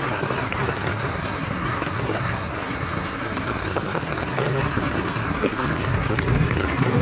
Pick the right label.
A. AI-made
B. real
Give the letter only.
A